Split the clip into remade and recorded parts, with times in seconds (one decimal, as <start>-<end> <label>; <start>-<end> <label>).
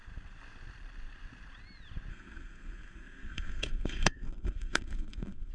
0.0-2.1 recorded; 2.1-5.5 remade